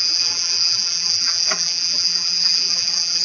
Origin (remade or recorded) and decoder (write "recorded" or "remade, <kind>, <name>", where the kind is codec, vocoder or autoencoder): remade, vocoder, BigVGAN v2